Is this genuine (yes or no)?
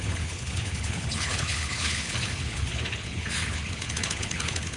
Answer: no